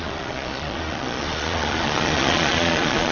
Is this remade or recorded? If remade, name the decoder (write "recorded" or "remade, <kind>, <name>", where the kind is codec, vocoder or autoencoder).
remade, vocoder, Vocos